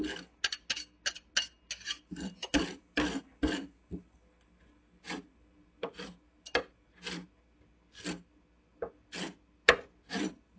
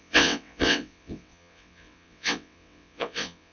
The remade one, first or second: second